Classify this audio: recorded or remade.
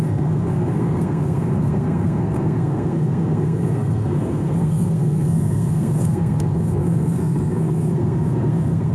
remade